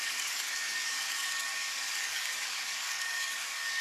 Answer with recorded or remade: remade